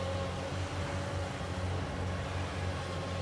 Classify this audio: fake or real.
real